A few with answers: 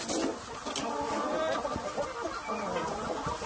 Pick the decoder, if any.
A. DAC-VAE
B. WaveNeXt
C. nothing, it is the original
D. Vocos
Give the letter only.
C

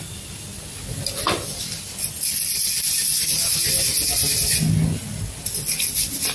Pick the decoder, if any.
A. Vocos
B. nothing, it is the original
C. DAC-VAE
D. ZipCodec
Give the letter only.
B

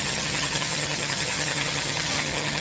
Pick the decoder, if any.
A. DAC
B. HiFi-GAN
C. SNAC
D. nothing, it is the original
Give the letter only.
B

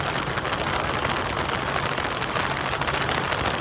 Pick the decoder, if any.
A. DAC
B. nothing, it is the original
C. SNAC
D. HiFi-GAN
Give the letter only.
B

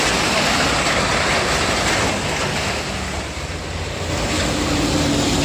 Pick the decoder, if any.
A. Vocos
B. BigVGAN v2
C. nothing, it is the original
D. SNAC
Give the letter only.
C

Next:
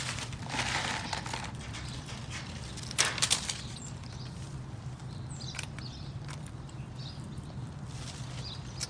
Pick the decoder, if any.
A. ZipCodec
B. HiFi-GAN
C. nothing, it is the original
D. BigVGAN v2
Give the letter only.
D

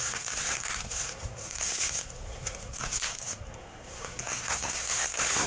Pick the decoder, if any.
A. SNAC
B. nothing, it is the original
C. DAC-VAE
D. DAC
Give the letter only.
A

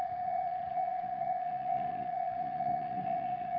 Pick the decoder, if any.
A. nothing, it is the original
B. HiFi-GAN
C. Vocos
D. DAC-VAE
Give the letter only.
C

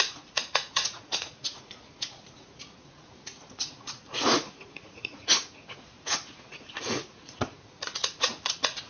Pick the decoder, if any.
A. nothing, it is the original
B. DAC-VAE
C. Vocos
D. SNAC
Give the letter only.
C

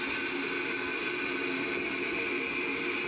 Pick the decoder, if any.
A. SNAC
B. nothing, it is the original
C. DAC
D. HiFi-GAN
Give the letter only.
B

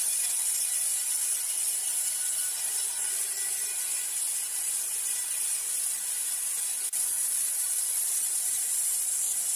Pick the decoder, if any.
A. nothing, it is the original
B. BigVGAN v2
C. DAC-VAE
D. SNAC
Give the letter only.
A